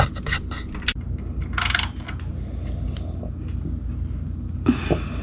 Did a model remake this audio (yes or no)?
no